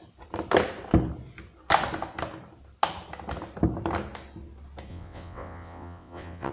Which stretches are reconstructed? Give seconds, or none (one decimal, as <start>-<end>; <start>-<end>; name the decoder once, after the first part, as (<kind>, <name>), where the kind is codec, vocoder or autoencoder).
4.9-6.5 (vocoder, WaveNeXt)